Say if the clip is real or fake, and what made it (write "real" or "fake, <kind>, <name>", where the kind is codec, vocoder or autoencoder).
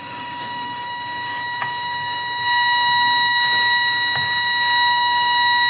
fake, codec, DAC